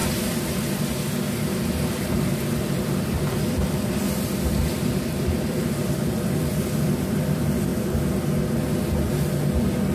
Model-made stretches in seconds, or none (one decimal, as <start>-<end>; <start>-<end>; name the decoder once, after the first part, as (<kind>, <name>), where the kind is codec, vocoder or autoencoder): 2.2-7.7 (vocoder, BigVGAN v2); 8.9-9.9